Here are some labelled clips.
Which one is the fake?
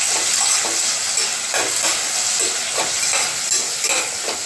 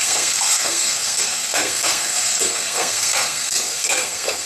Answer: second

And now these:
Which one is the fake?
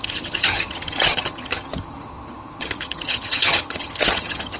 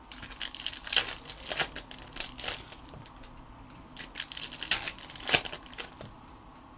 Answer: first